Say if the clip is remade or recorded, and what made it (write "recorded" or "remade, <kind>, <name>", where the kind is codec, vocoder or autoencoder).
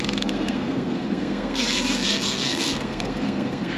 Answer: remade, codec, SNAC